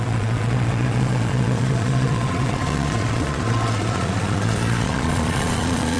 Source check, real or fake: fake